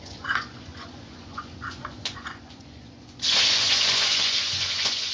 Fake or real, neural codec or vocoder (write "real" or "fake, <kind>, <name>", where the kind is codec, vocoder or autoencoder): fake, vocoder, Vocos